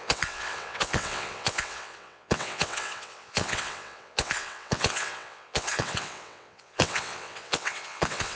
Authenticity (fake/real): fake